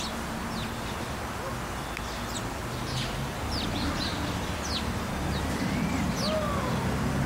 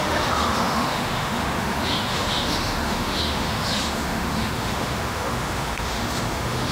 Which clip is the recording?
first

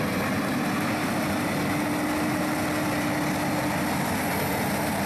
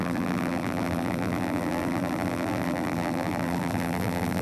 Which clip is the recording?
first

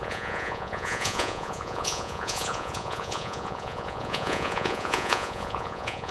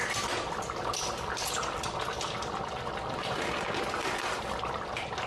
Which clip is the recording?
second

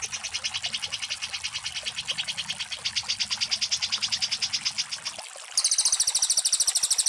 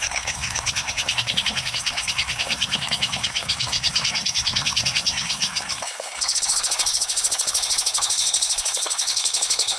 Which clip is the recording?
first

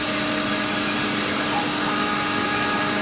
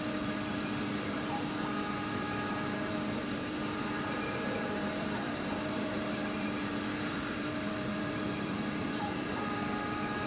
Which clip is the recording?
first